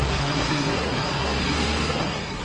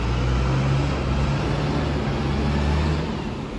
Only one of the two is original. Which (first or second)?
second